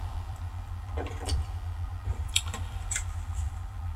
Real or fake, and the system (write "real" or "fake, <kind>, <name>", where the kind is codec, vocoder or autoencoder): fake, vocoder, BigVGAN v2